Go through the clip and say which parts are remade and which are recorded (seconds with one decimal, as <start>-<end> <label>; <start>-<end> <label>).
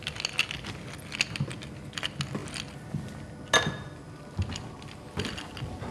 0.0-5.9 recorded